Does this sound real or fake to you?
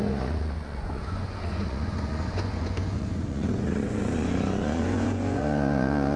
fake